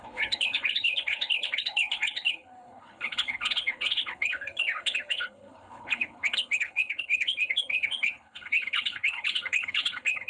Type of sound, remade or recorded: remade